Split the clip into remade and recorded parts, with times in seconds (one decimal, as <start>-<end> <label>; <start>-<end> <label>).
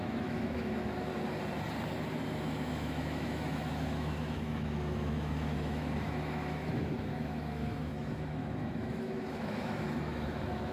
0.0-1.1 remade; 1.1-2.4 recorded; 2.4-10.7 remade